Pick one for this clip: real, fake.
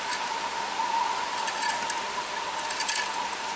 real